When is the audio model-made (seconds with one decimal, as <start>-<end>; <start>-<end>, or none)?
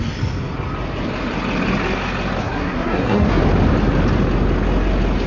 2.4-3.4